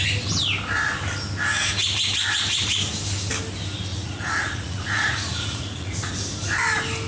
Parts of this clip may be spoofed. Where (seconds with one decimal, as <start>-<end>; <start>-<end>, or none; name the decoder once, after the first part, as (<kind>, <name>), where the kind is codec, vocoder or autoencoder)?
3.9-6.1 (vocoder, Vocos)